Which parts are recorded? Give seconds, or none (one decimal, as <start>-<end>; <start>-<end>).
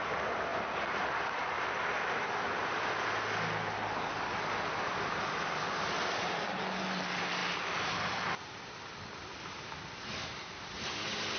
0.0-11.4